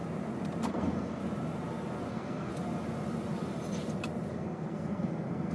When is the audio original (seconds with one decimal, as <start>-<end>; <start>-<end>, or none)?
0.0-0.7; 1.2-2.1; 2.5-4.3